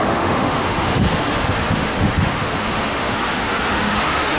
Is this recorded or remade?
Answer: remade